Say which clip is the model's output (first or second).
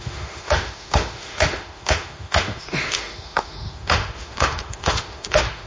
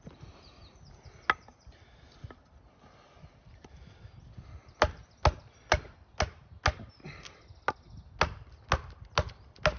first